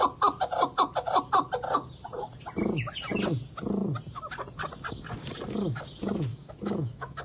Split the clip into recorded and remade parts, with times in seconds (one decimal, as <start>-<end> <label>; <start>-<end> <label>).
0.0-6.3 recorded; 6.3-7.2 remade